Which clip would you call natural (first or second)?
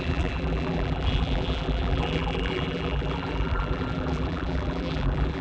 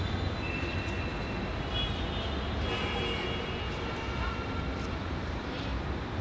second